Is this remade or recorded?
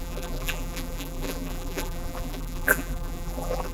remade